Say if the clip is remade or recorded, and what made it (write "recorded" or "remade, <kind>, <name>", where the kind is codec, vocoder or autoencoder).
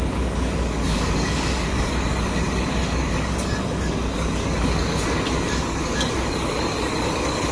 remade, codec, DAC